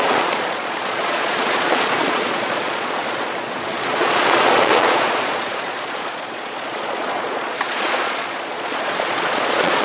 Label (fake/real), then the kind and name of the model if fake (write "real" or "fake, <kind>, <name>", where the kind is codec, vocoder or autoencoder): fake, vocoder, Vocos